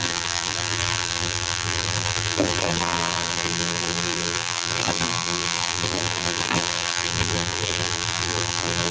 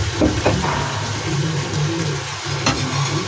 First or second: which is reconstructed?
first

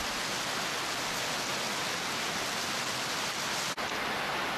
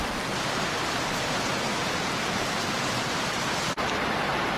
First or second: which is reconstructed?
second